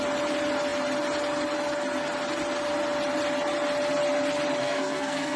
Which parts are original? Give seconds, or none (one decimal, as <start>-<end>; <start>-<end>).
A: 0.0-4.6